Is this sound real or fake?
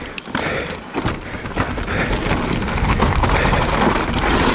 real